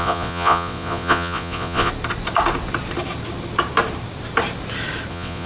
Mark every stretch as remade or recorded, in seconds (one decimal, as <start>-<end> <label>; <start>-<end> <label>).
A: 0.0-1.9 remade; 1.9-5.1 recorded; 5.1-5.5 remade